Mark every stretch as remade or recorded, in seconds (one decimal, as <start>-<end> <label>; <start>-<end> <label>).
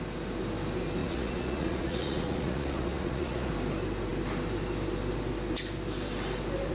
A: 0.0-1.0 recorded; 1.0-3.5 remade; 3.5-6.7 recorded